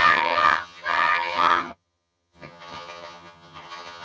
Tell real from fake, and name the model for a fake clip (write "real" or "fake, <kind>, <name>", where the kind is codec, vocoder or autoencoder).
fake, vocoder, HiFi-GAN